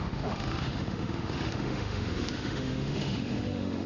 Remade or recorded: remade